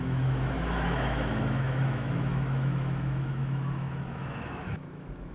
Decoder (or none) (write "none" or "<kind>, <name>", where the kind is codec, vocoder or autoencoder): autoencoder, DAC-VAE